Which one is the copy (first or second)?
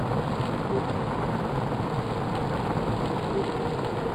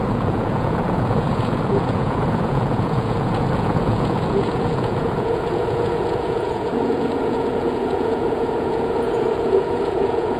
second